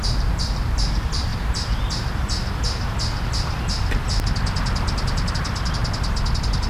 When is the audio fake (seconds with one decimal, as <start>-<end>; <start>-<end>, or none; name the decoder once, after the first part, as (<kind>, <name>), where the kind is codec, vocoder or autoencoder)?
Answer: 0.0-1.3 (vocoder, BigVGAN v2); 5.3-5.8